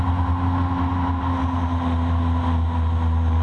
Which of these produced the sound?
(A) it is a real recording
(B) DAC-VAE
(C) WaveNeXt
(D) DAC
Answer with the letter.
A